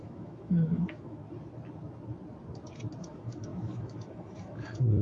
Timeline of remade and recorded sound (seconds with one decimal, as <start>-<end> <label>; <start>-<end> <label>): 0.0-1.2 remade; 1.2-3.1 recorded; 3.1-5.0 remade